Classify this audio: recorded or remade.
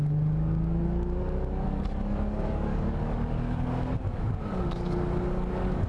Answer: remade